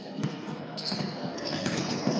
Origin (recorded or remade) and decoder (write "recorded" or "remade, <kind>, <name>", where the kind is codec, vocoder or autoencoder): remade, codec, SNAC